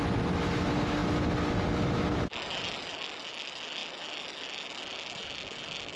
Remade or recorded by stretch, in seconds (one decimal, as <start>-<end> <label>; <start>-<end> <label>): 0.0-6.0 recorded